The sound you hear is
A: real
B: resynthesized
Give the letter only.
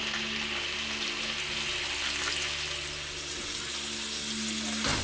A